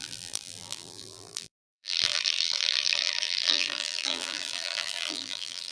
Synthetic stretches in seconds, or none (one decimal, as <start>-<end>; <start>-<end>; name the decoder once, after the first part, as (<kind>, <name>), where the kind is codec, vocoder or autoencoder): 0.0-5.7 (vocoder, BigVGAN v2)